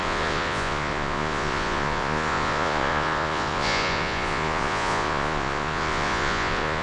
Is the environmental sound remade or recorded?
remade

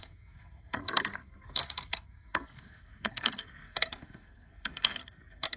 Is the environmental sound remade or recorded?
remade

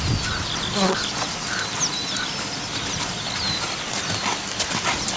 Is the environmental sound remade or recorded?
recorded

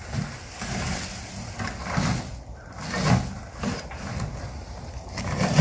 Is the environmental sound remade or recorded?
recorded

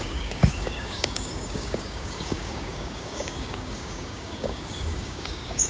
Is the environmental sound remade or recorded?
remade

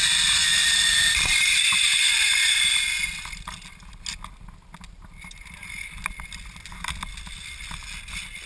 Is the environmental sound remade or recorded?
recorded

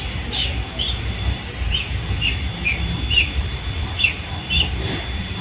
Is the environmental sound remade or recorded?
recorded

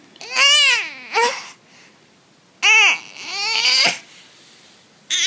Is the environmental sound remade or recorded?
recorded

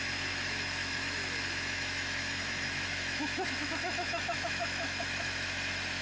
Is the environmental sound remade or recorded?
remade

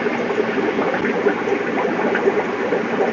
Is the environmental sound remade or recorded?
recorded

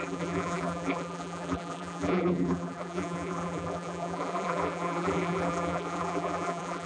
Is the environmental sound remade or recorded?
remade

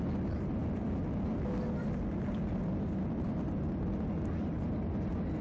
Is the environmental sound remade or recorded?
recorded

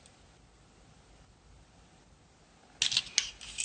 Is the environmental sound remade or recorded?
recorded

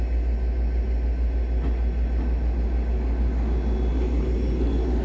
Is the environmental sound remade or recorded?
recorded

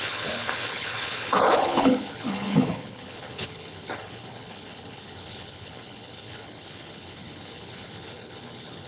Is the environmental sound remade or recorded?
remade